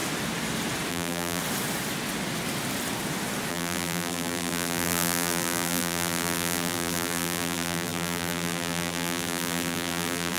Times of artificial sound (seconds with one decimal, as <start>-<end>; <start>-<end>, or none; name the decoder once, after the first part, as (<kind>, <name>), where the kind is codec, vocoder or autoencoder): 0.9-1.4 (vocoder, BigVGAN v2); 3.5-10.4